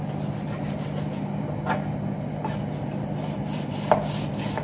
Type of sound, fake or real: real